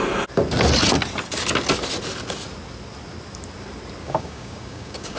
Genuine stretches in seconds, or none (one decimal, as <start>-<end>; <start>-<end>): 0.0-4.0